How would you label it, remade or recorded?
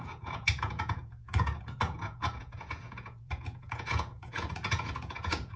remade